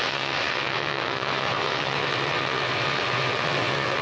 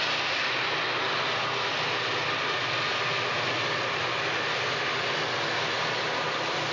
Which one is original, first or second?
second